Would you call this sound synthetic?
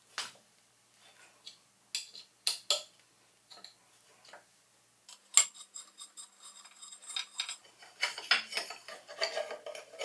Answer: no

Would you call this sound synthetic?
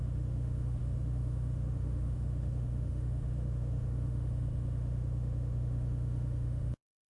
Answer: yes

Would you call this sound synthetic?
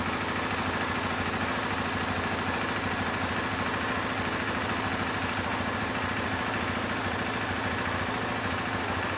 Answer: no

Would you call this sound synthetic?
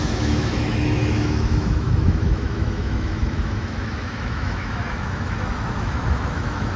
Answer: yes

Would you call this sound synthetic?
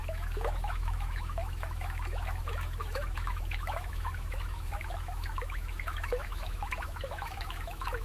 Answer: yes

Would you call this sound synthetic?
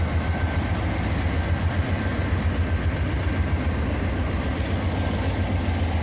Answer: no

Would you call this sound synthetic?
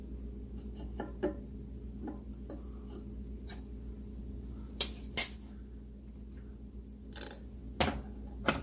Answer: no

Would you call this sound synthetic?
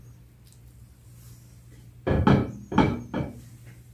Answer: no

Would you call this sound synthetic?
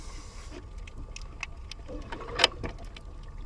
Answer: no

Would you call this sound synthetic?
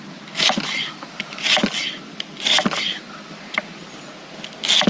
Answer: no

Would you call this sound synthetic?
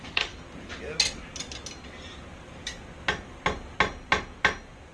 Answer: no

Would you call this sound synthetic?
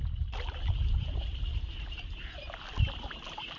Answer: no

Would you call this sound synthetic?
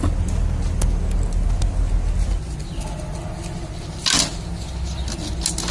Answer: no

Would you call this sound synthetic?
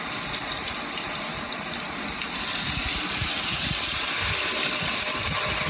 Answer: no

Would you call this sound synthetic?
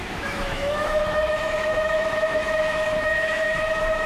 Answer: yes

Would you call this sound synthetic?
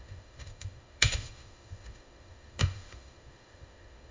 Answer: yes